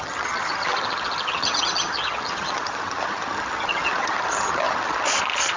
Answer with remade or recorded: remade